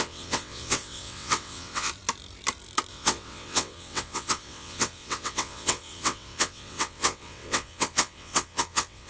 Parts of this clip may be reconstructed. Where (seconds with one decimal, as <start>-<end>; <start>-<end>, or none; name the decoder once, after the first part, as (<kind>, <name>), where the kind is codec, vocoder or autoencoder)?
0.0-1.9 (vocoder, WaveNeXt); 2.9-9.1